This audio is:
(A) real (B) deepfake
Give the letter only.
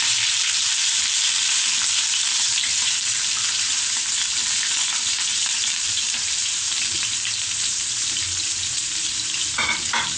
B